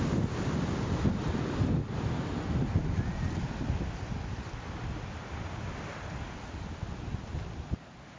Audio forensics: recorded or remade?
recorded